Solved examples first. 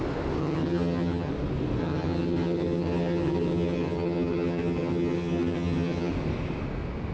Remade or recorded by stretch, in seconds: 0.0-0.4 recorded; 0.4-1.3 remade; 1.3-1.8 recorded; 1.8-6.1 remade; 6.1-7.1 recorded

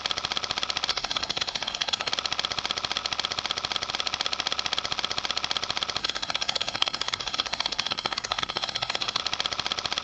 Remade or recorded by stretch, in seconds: 0.0-0.9 recorded; 0.9-2.1 remade; 2.1-6.0 recorded; 6.0-9.2 remade; 9.2-10.0 recorded